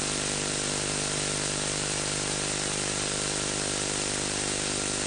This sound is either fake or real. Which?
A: real